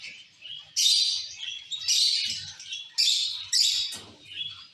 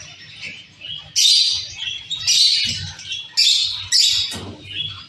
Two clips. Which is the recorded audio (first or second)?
second